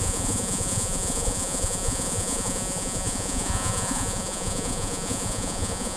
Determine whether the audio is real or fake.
fake